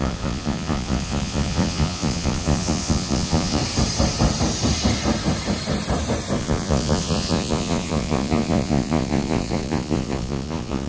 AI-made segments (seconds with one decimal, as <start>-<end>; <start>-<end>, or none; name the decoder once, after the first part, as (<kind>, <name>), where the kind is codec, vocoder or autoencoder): 0.0-3.6 (vocoder, Vocos); 6.4-10.9